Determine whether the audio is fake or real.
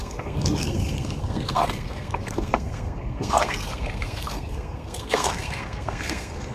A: fake